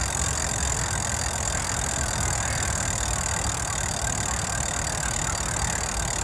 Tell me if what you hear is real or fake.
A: real